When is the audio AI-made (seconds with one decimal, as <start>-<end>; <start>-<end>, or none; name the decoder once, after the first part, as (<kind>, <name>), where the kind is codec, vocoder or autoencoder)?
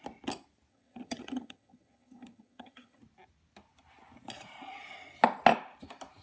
0.7-3.0 (vocoder, HiFi-GAN)